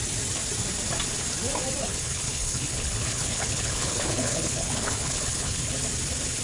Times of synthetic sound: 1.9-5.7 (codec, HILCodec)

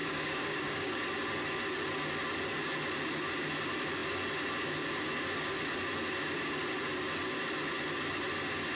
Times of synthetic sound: 0.0-1.0 (codec, DAC)

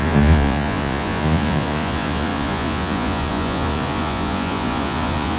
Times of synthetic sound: 0.0-5.4 (vocoder, Vocos)

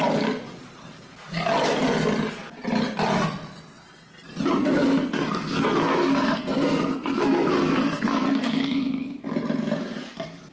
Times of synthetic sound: 4.6-9.2 (codec, SNAC)

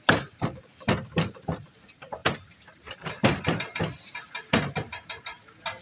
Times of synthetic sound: 2.2-3.4 (vocoder, BigVGAN v2)

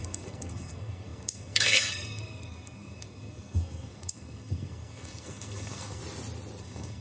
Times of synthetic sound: 0.0-6.0 (codec, SNAC); 6.6-7.0

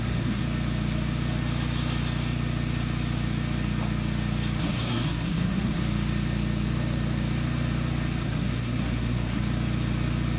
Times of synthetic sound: 0.0-0.4 (codec, SNAC); 4.6-5.8; 8.2-9.4

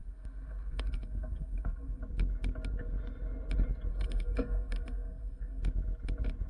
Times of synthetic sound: 0.0-2.0 (codec, SNAC); 3.9-5.6